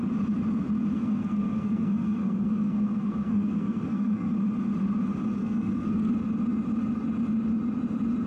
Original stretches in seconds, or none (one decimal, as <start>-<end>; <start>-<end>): 0.0-0.9; 4.3-5.4; 6.1-8.3